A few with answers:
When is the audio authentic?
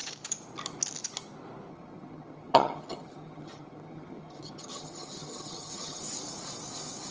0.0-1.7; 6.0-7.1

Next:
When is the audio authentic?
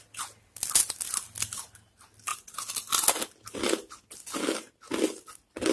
0.0-5.7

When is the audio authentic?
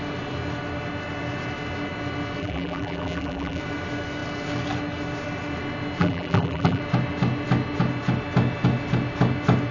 0.0-2.4; 3.6-6.0; 6.8-9.7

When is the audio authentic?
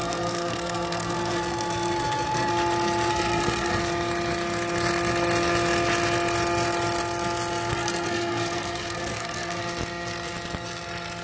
2.5-3.1; 3.8-7.7; 9.6-11.2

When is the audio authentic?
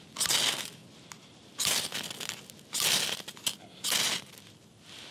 0.0-5.1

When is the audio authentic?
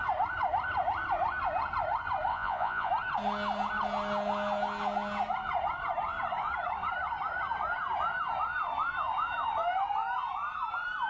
0.0-2.3; 2.9-11.1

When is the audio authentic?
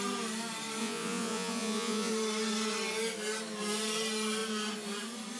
0.0-0.8; 2.1-5.4